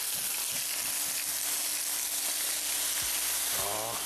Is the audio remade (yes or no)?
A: no